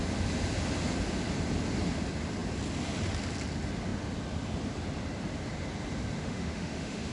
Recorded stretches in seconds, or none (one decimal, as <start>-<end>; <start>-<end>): 0.0-6.2